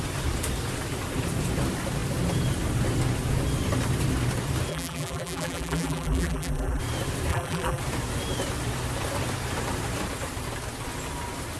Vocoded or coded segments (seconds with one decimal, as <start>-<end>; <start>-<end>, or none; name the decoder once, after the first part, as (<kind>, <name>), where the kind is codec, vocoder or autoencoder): 4.7-6.8 (vocoder, BigVGAN v2); 7.3-7.8